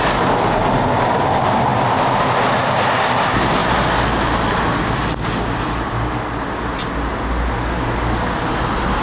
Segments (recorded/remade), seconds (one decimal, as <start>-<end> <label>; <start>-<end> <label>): 0.0-9.0 recorded